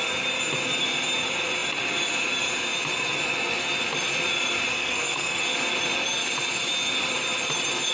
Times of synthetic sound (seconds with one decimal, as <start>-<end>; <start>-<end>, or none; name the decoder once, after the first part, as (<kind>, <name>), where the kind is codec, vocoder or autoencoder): 4.7-5.4 (codec, SNAC)